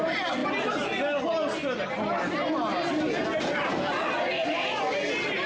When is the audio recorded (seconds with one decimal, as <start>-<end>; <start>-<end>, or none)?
0.0-5.5